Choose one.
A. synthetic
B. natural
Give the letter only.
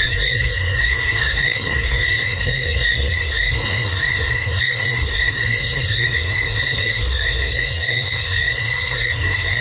A